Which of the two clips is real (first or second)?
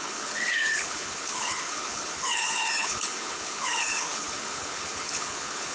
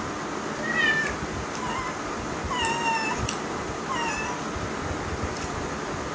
second